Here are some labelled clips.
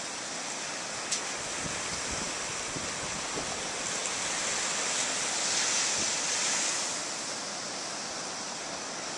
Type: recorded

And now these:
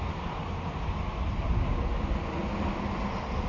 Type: recorded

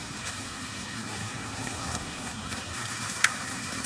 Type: remade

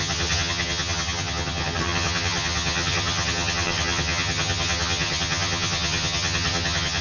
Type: remade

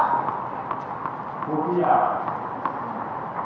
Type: remade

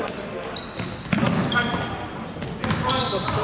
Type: recorded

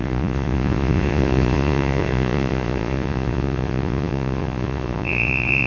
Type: remade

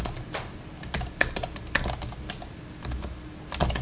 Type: recorded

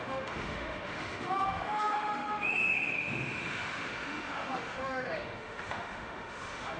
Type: remade